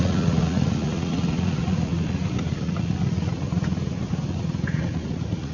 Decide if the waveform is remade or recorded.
remade